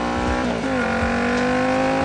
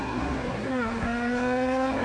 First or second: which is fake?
second